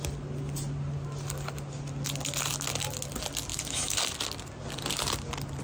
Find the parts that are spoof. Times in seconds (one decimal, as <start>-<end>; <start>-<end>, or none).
3.5-4.0